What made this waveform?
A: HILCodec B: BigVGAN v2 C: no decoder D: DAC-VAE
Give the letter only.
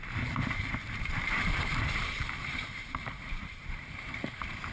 B